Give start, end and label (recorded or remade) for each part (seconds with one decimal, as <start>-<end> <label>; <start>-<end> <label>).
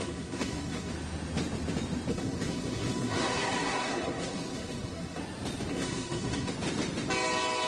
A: 0.0-0.9 remade; 0.9-2.1 recorded; 2.1-5.2 remade; 5.2-5.7 recorded; 5.7-6.5 remade; 6.5-7.7 recorded